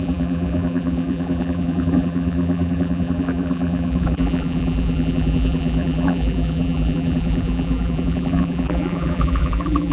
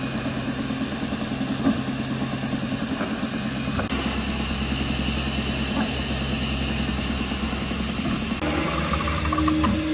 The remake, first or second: first